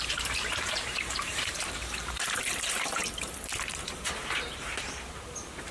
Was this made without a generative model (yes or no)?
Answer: no